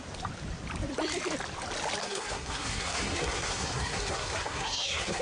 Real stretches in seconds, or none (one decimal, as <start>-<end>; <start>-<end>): 0.0-2.0